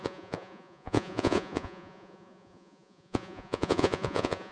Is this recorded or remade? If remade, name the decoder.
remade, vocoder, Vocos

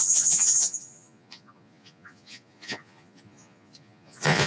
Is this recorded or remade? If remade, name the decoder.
remade, vocoder, Vocos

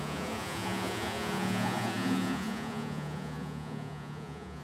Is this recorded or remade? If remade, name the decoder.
remade, vocoder, Vocos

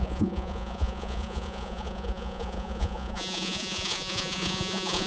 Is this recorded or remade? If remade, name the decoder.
remade, vocoder, Vocos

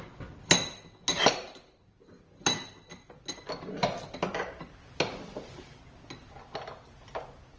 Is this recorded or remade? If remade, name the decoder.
recorded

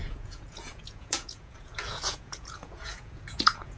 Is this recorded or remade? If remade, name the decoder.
remade, vocoder, Vocos